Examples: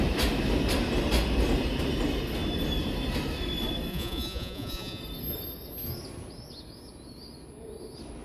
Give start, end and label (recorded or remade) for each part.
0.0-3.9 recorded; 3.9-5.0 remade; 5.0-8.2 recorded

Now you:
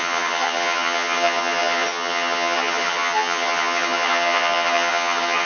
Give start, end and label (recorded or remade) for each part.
0.0-5.5 remade

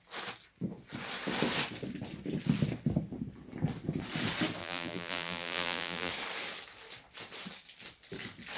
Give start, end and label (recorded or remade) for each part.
0.0-4.6 recorded; 4.6-6.1 remade; 6.1-8.6 recorded

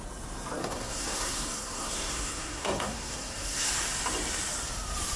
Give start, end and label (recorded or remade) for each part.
0.0-0.6 recorded; 0.6-3.7 remade; 3.7-5.2 recorded

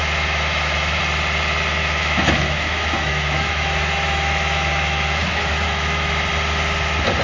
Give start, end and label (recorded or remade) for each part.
0.0-1.0 remade; 1.0-1.8 recorded; 1.8-6.1 remade; 6.1-7.2 recorded